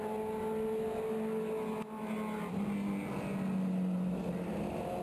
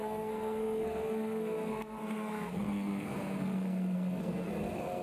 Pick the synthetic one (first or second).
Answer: second